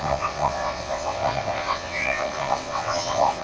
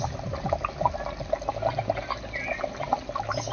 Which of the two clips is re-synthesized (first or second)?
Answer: first